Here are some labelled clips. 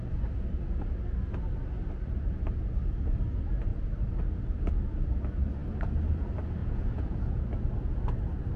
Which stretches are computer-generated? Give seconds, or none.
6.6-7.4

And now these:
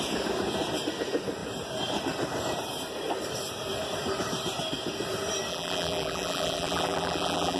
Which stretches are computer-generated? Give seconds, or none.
5.5-7.6

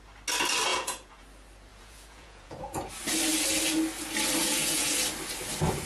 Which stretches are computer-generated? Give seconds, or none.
0.7-1.2; 1.7-2.9; 4.4-4.9